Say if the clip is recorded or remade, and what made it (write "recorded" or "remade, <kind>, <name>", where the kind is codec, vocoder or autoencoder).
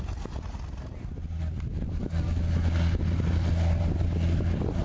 recorded